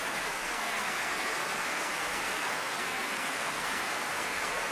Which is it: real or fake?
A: fake